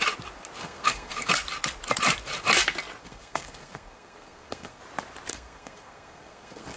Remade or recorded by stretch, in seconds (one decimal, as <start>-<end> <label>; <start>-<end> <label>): 0.0-0.6 recorded; 0.6-1.3 remade; 1.3-3.0 recorded; 3.0-4.8 remade; 4.8-5.3 recorded; 5.3-6.8 remade